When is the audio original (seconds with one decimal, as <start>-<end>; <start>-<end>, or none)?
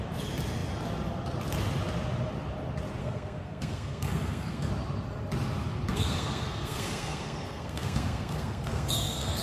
0.0-3.0; 4.7-5.9